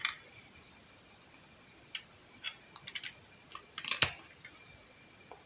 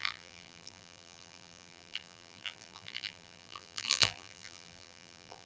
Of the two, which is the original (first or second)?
first